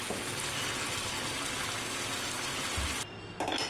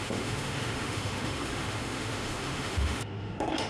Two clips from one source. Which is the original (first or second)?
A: first